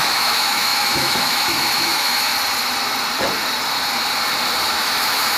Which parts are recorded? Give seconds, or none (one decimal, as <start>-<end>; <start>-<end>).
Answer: 2.3-4.7